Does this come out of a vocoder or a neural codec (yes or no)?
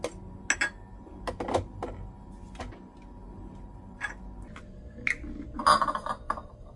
no